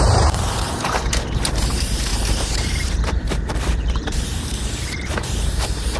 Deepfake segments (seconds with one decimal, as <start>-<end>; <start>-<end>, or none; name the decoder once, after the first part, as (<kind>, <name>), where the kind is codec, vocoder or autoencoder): 0.0-6.0 (vocoder, BigVGAN v2)